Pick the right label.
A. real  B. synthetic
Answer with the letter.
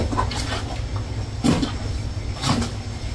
A